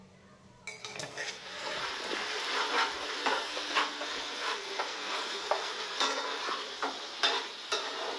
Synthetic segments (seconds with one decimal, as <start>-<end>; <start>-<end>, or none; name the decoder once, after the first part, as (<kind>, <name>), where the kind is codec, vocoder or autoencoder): 0.8-1.8 (codec, SNAC); 3.2-6.4